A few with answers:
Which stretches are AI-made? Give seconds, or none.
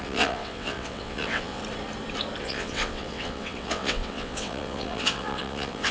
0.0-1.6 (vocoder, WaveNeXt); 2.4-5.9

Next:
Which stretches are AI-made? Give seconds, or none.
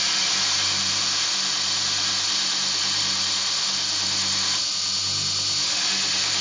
none